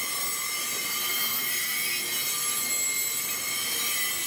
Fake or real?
real